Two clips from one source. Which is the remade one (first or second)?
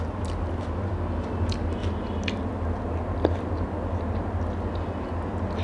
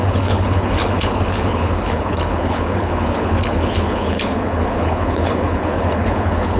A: second